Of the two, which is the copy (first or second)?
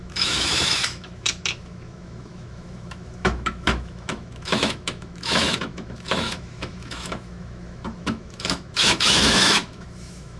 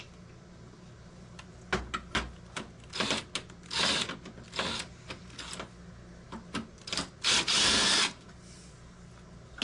first